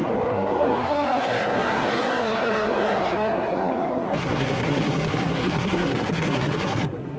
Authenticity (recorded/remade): remade